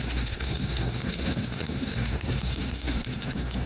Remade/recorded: remade